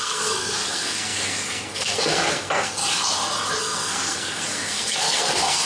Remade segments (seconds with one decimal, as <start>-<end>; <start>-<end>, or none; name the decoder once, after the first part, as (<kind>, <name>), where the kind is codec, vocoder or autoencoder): 0.0-2.8 (codec, SNAC); 3.6-5.7